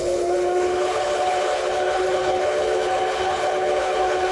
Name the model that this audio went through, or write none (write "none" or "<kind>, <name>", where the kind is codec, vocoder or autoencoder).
codec, HILCodec